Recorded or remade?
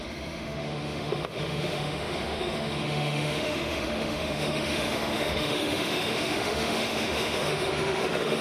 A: remade